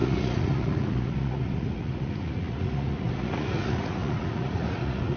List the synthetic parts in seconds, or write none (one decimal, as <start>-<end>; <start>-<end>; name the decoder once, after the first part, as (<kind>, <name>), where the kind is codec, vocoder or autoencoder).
0.0-5.2 (vocoder, Vocos)